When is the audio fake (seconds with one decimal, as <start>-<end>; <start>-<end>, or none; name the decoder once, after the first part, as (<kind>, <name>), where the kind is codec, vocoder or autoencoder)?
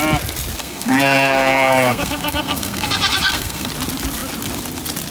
0.6-3.7 (codec, SNAC)